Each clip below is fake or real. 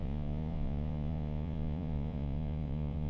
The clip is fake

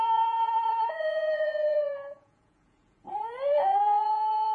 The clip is fake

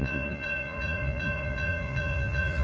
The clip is fake